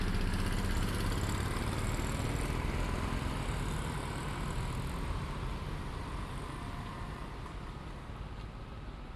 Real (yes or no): yes